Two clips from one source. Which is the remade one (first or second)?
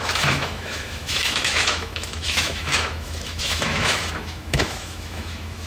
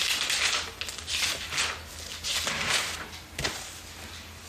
first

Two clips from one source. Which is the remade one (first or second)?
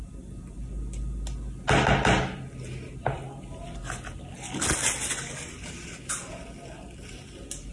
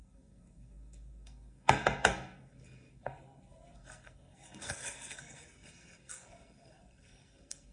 second